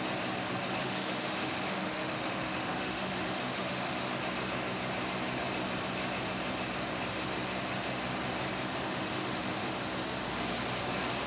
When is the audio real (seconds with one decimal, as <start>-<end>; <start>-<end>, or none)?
0.0-0.8; 4.1-8.7; 9.7-11.3